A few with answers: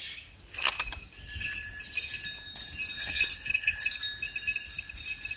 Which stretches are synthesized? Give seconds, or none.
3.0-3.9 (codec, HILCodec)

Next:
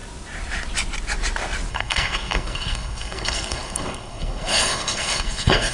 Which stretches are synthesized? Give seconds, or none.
1.7-5.7 (codec, SNAC)

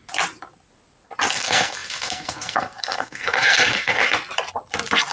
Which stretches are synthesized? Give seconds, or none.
1.3-4.0 (codec, SNAC)

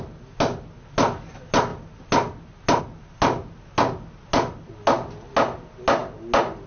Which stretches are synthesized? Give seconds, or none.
none

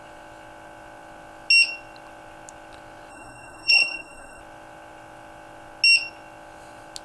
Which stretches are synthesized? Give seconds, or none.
3.1-4.4 (codec, SNAC)

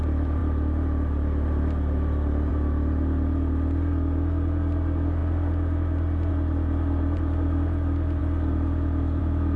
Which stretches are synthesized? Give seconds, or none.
none

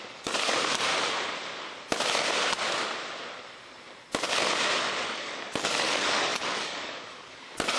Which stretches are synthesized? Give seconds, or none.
0.0-0.9 (codec, DAC); 4.8-7.8